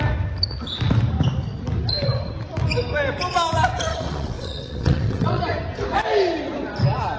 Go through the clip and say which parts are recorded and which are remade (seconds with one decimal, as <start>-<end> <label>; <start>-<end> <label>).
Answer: 0.0-3.9 recorded; 3.9-5.4 remade; 5.4-7.2 recorded